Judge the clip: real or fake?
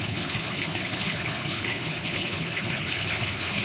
fake